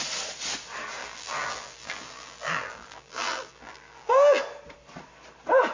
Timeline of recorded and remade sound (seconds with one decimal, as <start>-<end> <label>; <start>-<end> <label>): 0.0-1.0 recorded; 1.0-4.4 remade; 4.4-5.7 recorded